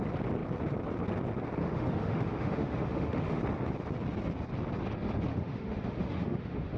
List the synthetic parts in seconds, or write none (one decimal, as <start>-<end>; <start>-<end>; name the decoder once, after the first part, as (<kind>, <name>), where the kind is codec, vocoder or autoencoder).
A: 1.6-3.4 (autoencoder, DAC-VAE); 5.3-6.8